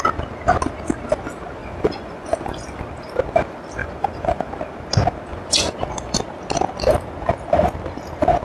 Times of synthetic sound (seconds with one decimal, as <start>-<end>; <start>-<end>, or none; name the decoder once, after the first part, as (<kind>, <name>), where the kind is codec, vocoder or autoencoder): 1.6-2.8 (vocoder, Vocos); 3.8-4.5; 5.3-6.2